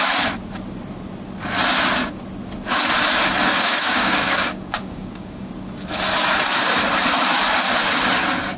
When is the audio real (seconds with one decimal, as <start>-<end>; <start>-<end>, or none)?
0.0-3.5; 5.5-8.6